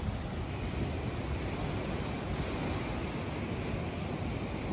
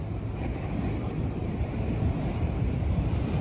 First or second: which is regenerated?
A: second